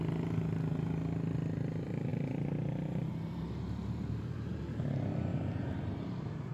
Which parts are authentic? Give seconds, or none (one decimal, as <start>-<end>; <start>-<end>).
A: 0.0-2.1; 4.6-5.3